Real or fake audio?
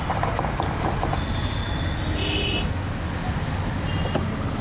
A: real